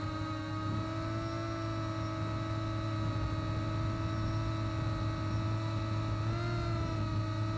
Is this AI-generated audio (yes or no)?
no